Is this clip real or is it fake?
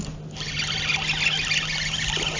real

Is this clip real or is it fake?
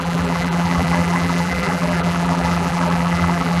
fake